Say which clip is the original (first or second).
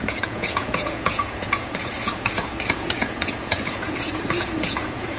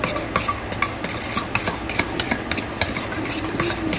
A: second